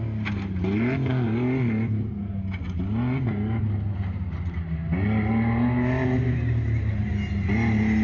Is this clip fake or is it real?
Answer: real